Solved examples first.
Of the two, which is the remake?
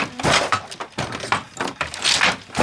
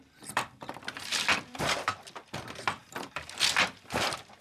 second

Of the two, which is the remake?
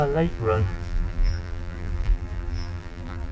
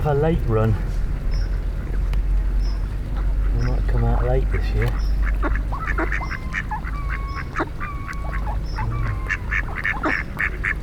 first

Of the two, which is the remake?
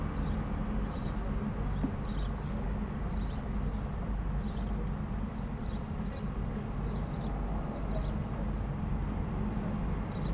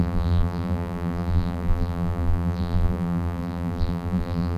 second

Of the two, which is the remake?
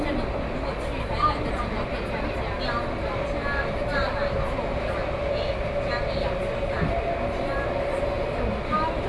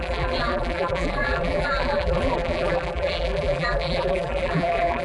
second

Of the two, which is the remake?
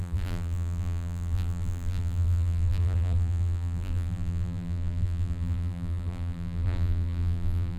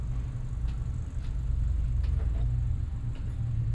first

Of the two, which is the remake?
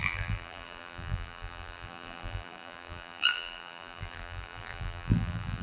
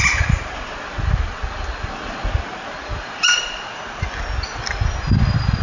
first